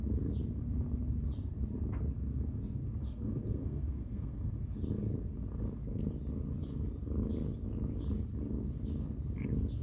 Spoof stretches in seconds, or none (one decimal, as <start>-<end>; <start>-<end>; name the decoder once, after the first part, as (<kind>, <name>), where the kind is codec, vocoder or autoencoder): 3.0-4.5 (codec, SNAC)